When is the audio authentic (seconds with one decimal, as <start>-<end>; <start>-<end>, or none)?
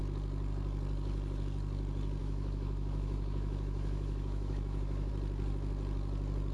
0.0-2.2; 5.1-6.5